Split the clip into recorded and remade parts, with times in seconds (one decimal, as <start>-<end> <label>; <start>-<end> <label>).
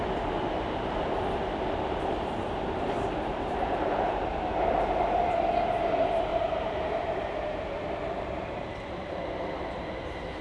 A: 0.0-2.1 recorded; 2.1-4.2 remade; 4.2-6.3 recorded; 6.3-10.0 remade; 10.0-10.4 recorded